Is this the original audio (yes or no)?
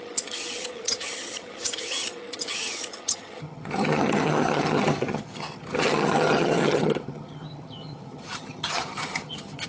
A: no